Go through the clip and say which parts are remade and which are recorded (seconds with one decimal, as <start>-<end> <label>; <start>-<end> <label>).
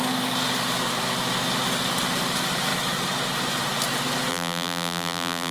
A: 0.0-4.3 recorded; 4.3-5.5 remade